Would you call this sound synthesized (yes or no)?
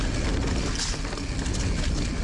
no